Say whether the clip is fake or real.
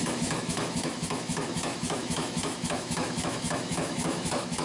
fake